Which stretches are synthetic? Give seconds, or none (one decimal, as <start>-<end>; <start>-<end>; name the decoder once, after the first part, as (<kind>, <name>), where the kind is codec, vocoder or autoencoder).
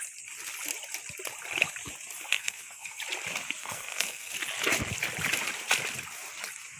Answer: 2.3-3.0 (codec, SNAC); 3.6-4.3